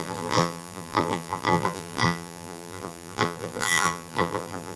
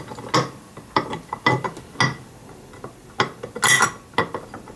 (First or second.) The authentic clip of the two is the second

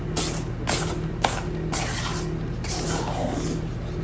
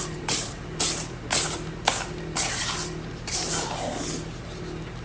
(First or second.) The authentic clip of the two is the first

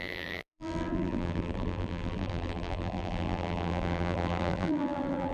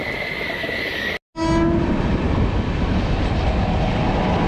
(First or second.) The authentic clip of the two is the second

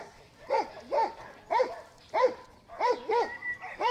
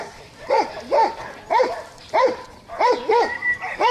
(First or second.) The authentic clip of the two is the first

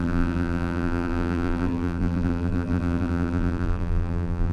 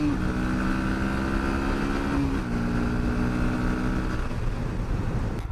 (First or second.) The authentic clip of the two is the second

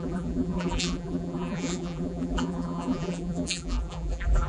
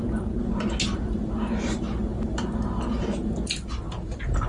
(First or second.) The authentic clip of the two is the second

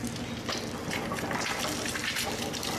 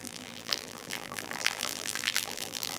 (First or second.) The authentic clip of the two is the first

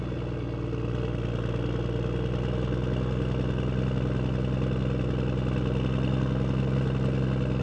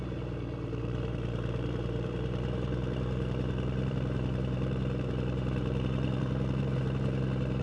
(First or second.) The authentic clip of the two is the first